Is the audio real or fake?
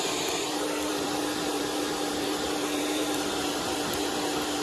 fake